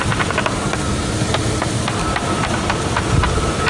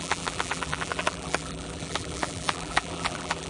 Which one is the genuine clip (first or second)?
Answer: first